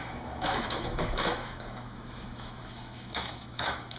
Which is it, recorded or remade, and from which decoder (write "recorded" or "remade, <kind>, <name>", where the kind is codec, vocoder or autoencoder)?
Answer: remade, autoencoder, DAC-VAE